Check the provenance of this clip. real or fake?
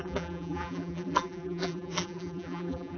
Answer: fake